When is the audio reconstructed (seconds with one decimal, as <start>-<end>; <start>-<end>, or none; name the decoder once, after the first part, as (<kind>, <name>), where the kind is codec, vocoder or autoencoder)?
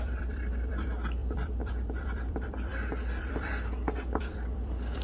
0.0-5.0 (vocoder, BigVGAN v2)